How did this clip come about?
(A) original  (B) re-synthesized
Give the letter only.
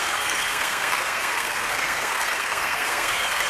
B